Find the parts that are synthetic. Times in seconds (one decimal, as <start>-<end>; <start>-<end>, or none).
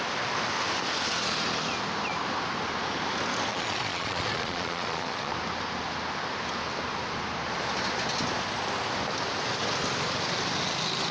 3.5-5.3